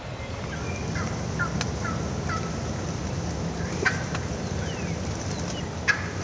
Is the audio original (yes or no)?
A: yes